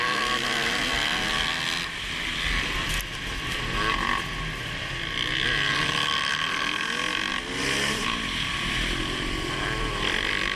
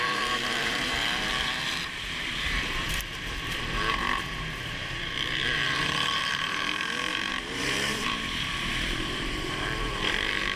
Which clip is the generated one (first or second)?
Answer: second